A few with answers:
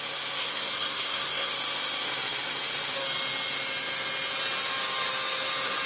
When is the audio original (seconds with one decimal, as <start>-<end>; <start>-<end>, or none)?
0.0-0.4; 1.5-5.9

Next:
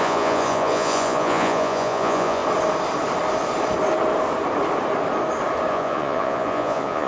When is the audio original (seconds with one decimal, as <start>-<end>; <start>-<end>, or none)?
2.4-5.7

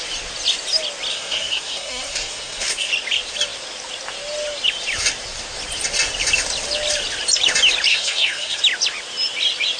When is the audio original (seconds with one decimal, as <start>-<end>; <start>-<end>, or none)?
0.0-1.1; 2.9-7.9; 8.6-9.8

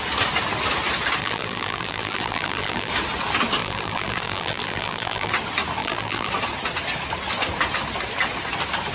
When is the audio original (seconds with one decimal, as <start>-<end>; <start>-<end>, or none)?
0.0-1.2; 2.9-3.6; 5.3-5.8; 6.3-8.9

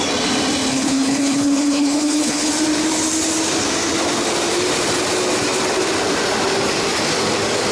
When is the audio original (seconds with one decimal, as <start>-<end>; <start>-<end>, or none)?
0.0-0.7; 2.5-7.7

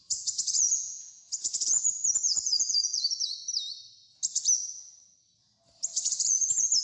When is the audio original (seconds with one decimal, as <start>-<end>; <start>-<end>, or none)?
3.4-6.1

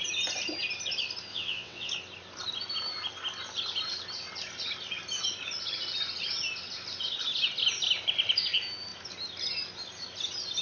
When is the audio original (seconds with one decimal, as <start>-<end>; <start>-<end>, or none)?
0.0-1.3; 1.9-10.6